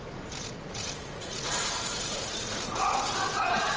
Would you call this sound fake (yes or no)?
yes